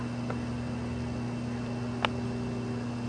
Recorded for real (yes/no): yes